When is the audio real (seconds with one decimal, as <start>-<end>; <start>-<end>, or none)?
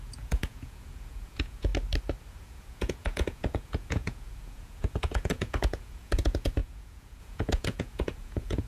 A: 1.7-2.3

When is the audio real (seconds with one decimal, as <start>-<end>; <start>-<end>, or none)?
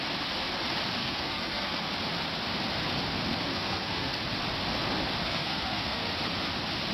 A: 0.0-1.0; 1.9-3.5; 4.1-5.2; 6.1-6.9